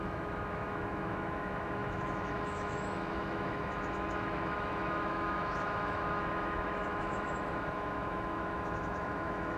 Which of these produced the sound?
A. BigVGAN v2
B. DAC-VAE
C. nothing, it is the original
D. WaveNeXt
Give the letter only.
B